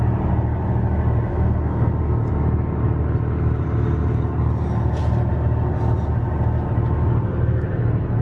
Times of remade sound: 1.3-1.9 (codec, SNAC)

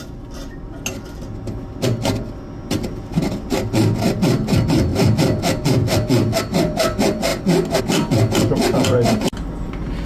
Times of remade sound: none

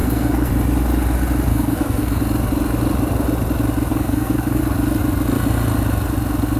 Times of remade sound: 0.0-0.5 (codec, SNAC); 1.5-2.2; 3.9-4.6

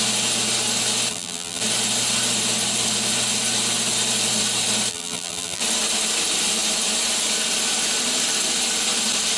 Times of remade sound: 1.1-1.6 (vocoder, BigVGAN v2); 4.9-5.6

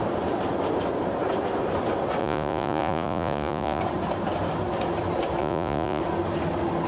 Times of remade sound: 2.2-3.8 (vocoder, Vocos); 5.4-6.0

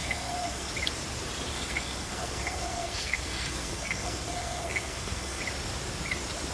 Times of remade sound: 0.0-0.7 (codec, SNAC); 1.5-5.4

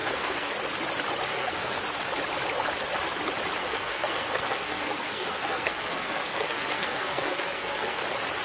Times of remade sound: 0.0-0.5 (codec, SNAC); 1.3-1.8; 3.6-8.0